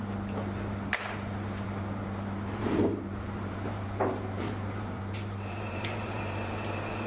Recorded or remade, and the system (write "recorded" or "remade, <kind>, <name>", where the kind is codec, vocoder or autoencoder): remade, vocoder, BigVGAN v2